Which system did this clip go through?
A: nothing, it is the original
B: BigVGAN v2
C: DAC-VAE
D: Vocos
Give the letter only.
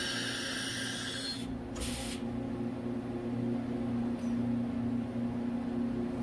A